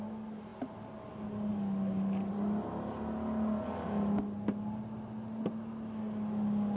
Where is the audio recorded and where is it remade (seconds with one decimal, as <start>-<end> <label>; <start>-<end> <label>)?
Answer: 0.0-6.8 recorded